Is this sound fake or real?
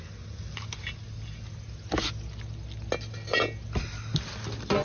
real